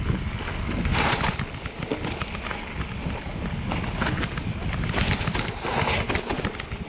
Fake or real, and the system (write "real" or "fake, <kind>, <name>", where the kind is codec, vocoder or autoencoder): real